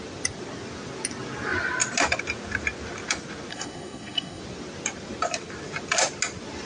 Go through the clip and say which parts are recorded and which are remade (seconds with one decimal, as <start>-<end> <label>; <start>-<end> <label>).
0.0-3.5 recorded; 3.5-4.4 remade; 4.4-6.7 recorded